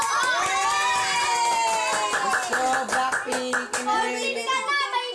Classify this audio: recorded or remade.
recorded